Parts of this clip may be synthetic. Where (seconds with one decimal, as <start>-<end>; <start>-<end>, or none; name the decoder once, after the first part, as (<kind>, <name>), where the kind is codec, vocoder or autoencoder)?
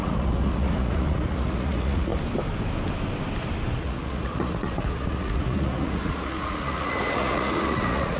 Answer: 0.0-2.1 (vocoder, Vocos); 3.8-8.2